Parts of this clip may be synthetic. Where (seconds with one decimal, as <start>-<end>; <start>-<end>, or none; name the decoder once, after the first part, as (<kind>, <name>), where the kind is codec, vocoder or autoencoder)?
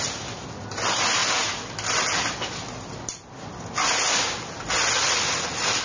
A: none